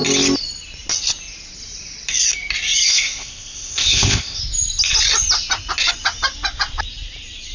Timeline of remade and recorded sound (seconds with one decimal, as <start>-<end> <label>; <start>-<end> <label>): 0.0-2.9 recorded; 2.9-4.4 remade; 4.4-7.5 recorded